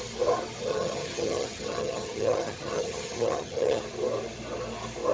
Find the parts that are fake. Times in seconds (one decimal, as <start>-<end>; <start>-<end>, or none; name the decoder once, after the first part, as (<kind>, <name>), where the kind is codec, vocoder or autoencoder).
0.7-3.8 (vocoder, HiFi-GAN)